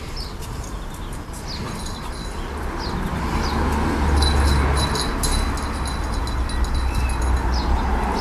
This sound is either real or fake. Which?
real